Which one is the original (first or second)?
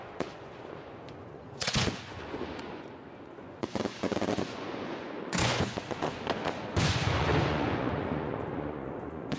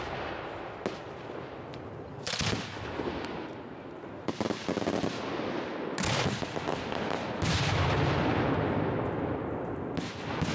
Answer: second